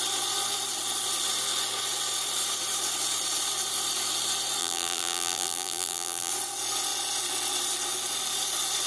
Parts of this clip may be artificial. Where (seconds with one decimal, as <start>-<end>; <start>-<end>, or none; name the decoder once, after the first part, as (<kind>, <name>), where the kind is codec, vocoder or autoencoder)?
4.6-6.3 (vocoder, BigVGAN v2)